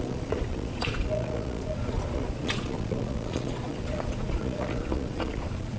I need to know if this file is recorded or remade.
remade